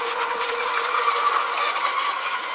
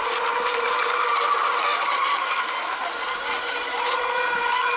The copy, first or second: first